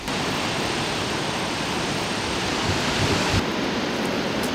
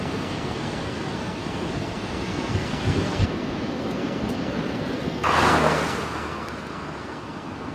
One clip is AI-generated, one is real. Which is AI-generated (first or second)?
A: second